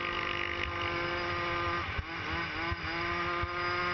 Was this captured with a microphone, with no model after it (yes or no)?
yes